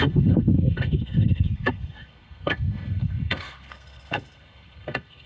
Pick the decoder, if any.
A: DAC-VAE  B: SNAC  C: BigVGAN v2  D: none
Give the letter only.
B